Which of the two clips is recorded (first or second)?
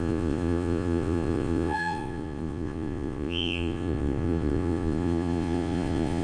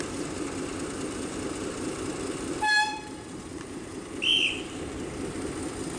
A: second